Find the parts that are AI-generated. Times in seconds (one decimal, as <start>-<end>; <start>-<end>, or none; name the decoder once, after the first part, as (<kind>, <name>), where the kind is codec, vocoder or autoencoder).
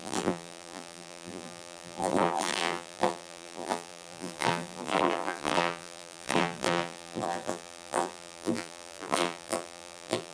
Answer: 0.0-10.3 (vocoder, BigVGAN v2)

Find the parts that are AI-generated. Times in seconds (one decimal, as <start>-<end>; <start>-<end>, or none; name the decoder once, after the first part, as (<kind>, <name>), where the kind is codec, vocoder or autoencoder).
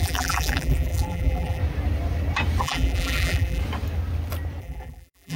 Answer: 0.0-1.6 (vocoder, BigVGAN v2); 2.6-3.6; 4.6-5.4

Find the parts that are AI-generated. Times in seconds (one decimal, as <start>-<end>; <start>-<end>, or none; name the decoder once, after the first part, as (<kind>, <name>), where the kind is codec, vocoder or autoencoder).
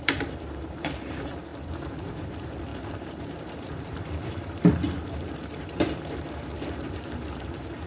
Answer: 0.0-7.9 (vocoder, BigVGAN v2)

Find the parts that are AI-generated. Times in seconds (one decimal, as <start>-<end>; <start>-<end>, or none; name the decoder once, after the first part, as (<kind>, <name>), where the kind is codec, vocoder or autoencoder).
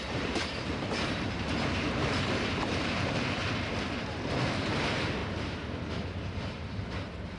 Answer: 0.0-3.4 (vocoder, BigVGAN v2); 4.0-5.2; 6.1-7.4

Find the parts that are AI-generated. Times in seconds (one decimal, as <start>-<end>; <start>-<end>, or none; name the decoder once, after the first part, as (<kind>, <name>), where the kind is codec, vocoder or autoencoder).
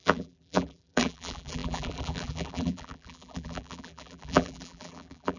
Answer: 0.0-5.4 (vocoder, BigVGAN v2)